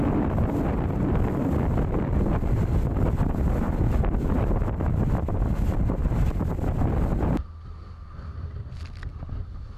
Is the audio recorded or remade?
recorded